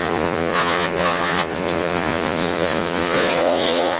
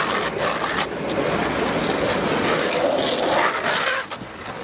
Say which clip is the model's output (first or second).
first